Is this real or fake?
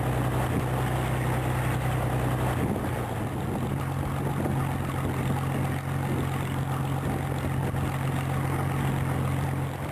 real